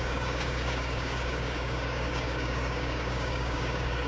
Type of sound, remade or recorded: remade